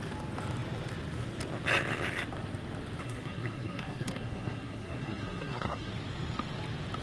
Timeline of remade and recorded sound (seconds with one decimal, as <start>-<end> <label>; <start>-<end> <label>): 0.0-3.0 recorded; 3.0-5.9 remade; 5.9-7.0 recorded

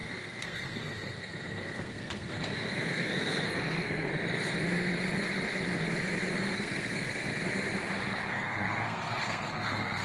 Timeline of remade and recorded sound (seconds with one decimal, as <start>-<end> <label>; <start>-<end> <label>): 0.0-4.1 remade; 4.1-6.3 recorded; 6.3-7.3 remade; 7.3-8.3 recorded; 8.3-10.0 remade

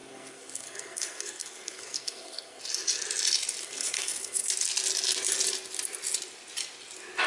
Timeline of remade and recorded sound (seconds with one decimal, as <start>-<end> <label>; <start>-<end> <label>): 0.0-2.6 remade; 2.6-3.6 recorded; 3.6-4.5 remade; 4.5-7.3 recorded

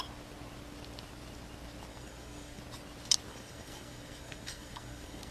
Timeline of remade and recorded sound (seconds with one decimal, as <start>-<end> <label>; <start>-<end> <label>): 0.0-1.9 recorded; 1.9-2.6 remade; 2.6-3.3 recorded; 3.3-5.3 remade

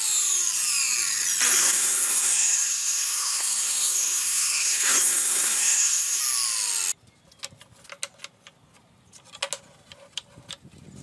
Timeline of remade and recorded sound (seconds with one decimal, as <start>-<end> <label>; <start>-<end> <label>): 0.0-1.6 recorded; 1.6-6.2 remade; 6.2-11.0 recorded

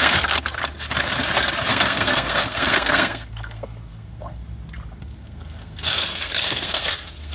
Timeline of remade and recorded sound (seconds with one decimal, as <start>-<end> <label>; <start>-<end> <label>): 0.0-0.6 remade; 0.6-1.7 recorded; 1.7-4.4 remade; 4.4-5.0 recorded; 5.0-7.3 remade